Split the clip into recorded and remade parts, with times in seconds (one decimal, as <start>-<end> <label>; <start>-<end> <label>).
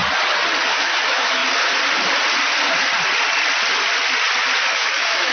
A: 0.0-0.6 recorded; 0.6-1.4 remade; 1.4-4.6 recorded; 4.6-5.3 remade